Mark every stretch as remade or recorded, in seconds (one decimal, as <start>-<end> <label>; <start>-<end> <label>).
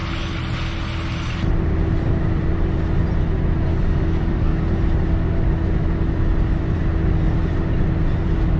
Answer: 0.0-3.7 recorded; 3.7-4.6 remade; 4.6-8.6 recorded